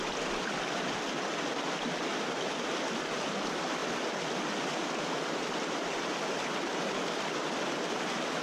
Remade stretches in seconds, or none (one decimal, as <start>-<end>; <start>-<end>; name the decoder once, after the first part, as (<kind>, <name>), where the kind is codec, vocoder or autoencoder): none